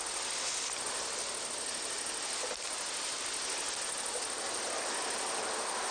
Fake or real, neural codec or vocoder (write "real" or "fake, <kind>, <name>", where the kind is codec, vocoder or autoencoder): real